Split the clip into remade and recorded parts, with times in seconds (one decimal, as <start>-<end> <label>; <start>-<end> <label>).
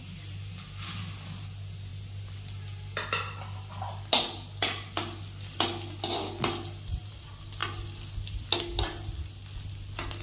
0.0-10.2 recorded